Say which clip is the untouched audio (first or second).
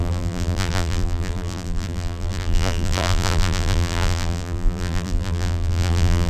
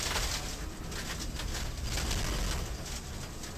second